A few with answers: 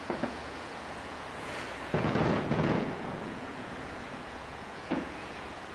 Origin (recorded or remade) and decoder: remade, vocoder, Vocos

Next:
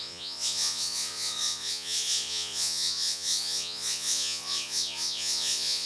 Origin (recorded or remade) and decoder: remade, vocoder, Vocos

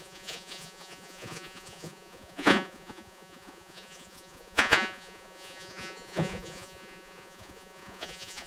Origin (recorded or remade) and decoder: remade, vocoder, Vocos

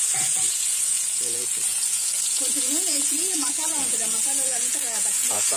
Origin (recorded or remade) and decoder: remade, vocoder, Vocos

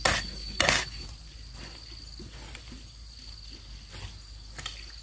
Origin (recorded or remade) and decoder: recorded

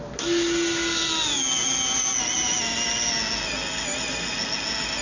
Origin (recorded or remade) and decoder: recorded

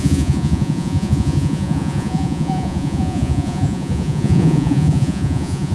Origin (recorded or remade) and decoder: remade, vocoder, Vocos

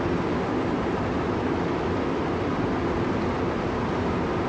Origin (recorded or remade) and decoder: recorded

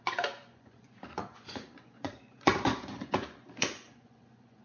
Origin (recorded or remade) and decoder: remade, vocoder, Vocos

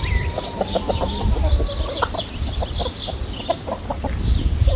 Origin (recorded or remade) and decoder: recorded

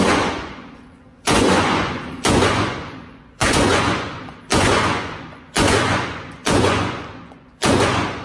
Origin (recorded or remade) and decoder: remade, vocoder, Vocos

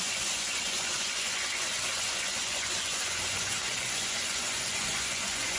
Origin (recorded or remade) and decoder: remade, vocoder, Vocos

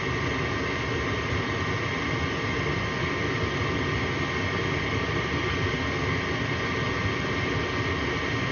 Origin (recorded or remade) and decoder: recorded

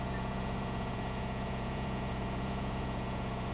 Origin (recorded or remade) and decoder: remade, vocoder, Vocos